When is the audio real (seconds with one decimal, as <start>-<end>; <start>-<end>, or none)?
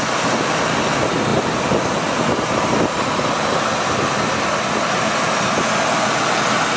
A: 0.0-6.8